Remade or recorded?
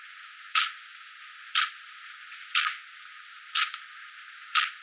remade